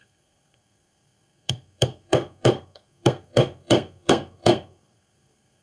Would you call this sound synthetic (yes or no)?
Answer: yes